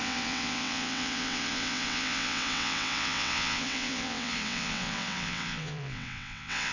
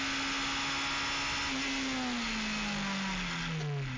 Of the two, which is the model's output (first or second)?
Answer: first